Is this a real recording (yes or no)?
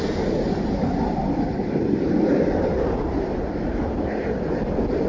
yes